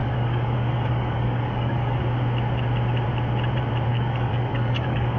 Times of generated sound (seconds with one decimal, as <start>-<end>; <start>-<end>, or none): 0.0-2.0; 3.9-5.2